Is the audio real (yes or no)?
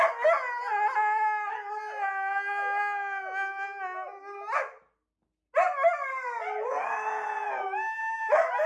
yes